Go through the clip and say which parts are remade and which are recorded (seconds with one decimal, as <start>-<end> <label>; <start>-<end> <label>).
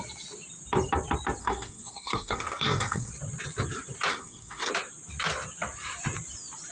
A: 0.0-1.4 recorded; 1.4-3.1 remade; 3.1-4.1 recorded; 4.1-4.7 remade; 4.7-6.7 recorded